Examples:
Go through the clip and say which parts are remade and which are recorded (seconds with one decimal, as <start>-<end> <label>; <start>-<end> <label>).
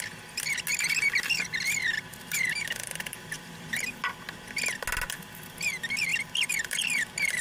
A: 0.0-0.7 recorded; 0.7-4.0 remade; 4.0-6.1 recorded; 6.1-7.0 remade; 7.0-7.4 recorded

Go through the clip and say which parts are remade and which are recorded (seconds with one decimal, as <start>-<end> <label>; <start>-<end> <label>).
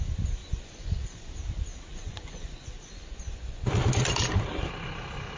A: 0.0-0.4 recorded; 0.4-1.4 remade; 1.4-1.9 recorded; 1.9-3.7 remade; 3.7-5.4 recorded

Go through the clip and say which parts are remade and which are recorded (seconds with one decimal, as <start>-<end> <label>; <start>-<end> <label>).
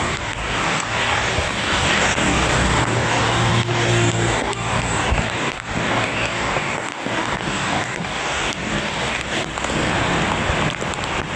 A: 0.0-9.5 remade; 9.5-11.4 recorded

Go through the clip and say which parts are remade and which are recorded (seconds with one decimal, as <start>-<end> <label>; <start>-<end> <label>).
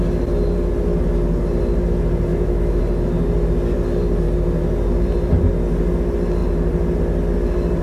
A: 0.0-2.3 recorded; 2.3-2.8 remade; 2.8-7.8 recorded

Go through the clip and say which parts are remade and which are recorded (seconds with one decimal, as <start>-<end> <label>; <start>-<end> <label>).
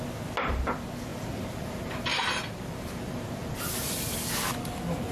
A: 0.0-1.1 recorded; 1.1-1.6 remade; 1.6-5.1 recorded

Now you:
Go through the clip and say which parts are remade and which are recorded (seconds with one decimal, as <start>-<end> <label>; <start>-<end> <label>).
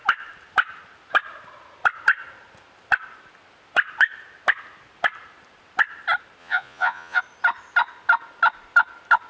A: 0.0-6.4 recorded; 6.4-7.2 remade; 7.2-9.3 recorded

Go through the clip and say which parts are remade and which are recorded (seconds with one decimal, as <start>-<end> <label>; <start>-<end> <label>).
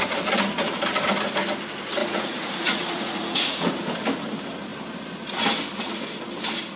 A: 0.0-2.0 recorded; 2.0-3.7 remade; 3.7-6.8 recorded